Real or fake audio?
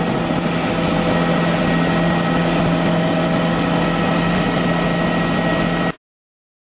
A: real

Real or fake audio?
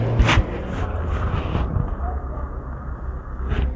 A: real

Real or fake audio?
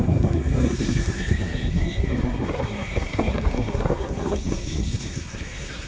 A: fake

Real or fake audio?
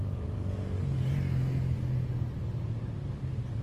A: real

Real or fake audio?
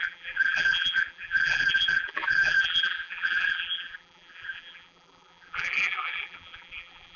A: fake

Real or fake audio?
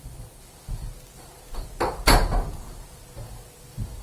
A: real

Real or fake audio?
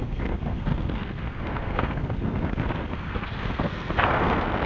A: fake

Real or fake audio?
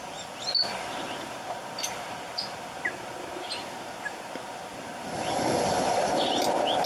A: real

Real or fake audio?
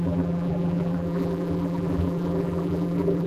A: fake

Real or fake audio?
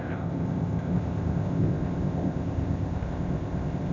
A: fake